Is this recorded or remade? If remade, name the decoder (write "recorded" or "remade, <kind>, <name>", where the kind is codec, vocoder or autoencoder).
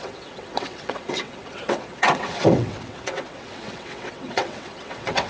remade, vocoder, WaveNeXt